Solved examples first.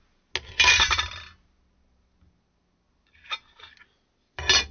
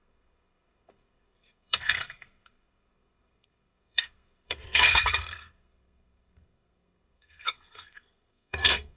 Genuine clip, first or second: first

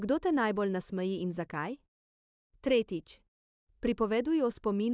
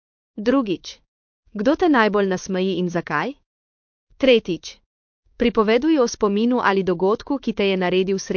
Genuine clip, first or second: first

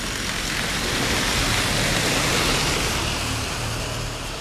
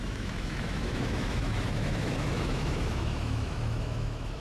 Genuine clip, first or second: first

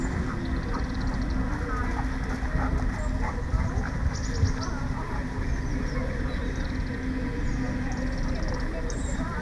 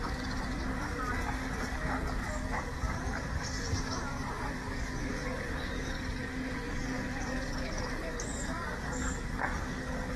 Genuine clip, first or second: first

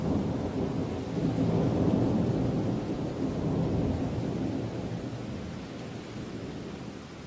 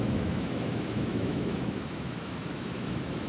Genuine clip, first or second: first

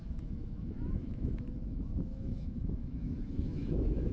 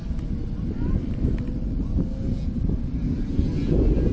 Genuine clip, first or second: second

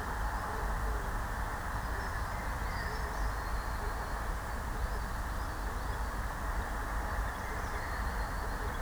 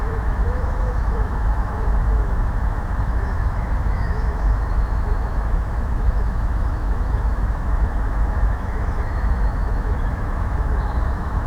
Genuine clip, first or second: first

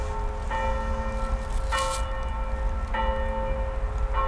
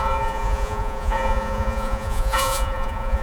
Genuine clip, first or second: first